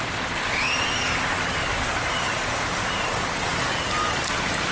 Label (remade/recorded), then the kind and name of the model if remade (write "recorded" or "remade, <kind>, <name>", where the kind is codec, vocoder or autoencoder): recorded